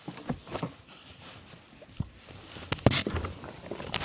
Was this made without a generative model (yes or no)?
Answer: yes